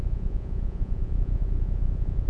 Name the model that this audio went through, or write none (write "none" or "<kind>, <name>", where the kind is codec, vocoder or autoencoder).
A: vocoder, Vocos